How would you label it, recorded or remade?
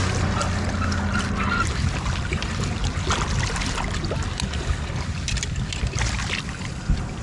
recorded